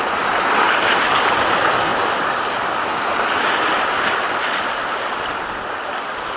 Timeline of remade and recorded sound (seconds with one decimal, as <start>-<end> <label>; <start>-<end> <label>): 0.0-6.4 recorded

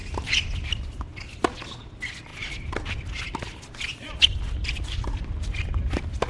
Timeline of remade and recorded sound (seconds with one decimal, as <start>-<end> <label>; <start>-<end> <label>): 0.0-6.3 recorded

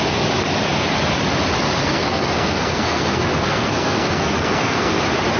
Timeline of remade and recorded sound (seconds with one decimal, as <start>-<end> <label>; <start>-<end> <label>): 0.0-1.8 recorded; 1.8-5.0 remade; 5.0-5.4 recorded